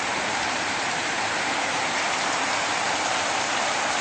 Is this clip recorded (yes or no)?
no